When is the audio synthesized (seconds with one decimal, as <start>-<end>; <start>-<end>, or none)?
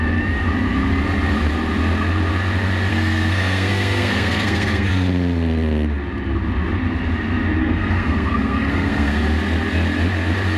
2.9-4.9; 7.6-9.2